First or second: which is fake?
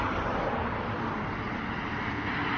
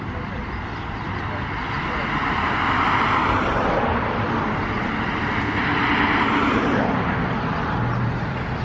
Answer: second